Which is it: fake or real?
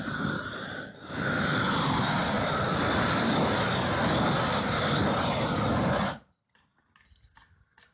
real